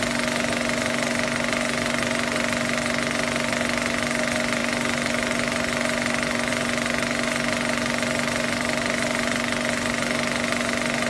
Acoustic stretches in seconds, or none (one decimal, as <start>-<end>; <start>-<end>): 0.0-11.1